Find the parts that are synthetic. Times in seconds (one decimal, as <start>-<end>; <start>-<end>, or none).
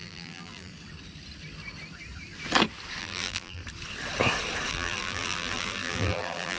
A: 0.0-0.7; 3.0-3.6; 4.7-6.6